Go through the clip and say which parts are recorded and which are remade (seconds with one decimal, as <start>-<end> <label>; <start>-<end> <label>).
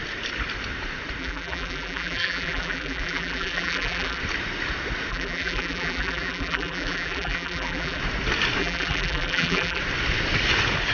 0.0-1.2 recorded; 1.2-4.2 remade; 4.2-5.1 recorded; 5.1-8.0 remade; 8.0-8.6 recorded; 8.6-9.8 remade; 9.8-10.9 recorded